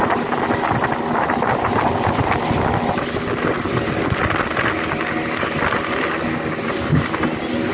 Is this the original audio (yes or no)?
yes